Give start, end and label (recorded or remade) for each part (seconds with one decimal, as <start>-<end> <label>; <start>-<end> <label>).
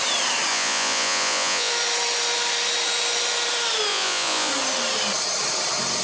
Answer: 0.0-0.5 recorded; 0.5-1.7 remade; 1.7-3.9 recorded; 3.9-4.5 remade; 4.5-6.0 recorded